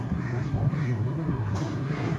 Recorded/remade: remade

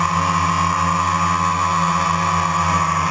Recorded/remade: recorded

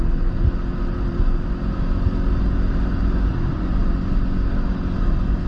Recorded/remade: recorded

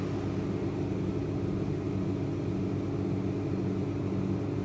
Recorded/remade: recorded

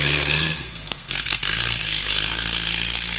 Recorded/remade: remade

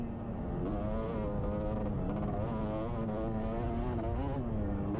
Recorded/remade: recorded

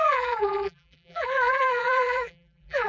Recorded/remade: remade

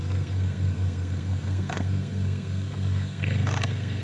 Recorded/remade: remade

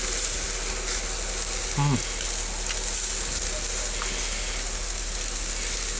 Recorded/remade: recorded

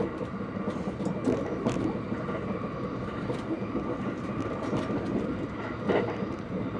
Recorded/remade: recorded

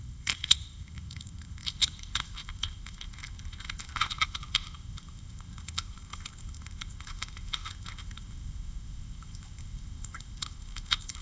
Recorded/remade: remade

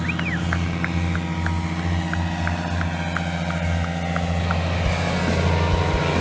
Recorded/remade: recorded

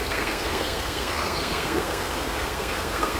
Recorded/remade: remade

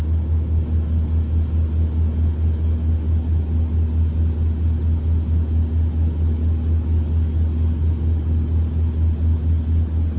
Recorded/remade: recorded